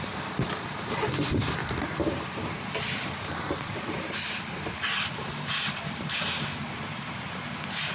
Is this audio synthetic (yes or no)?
yes